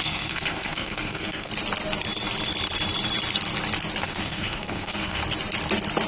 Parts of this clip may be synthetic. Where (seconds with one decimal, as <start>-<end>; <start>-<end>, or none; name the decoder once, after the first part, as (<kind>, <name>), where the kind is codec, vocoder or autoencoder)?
0.0-1.5 (codec, SNAC); 4.0-5.2